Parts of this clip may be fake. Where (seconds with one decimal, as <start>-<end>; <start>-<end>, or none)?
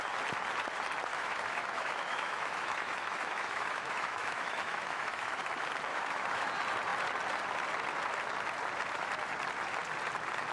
1.1-5.4; 5.9-6.5